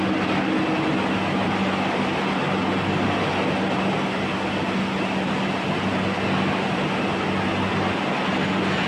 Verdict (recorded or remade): recorded